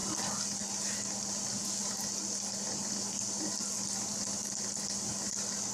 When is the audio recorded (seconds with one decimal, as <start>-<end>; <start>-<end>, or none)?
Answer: 0.0-5.7